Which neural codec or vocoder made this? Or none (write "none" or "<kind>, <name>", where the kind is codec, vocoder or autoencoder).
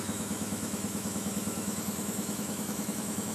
autoencoder, DAC-VAE